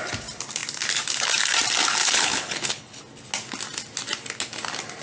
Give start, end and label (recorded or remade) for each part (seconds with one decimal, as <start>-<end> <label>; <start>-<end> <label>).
0.0-2.0 recorded; 2.0-3.0 remade; 3.0-5.0 recorded